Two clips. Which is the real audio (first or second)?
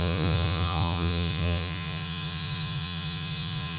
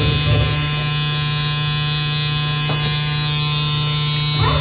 second